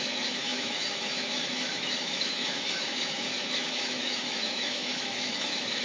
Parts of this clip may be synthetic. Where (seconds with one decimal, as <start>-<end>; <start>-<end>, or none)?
0.0-5.8